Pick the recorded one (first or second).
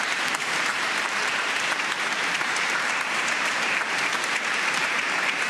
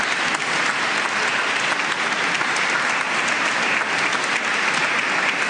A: second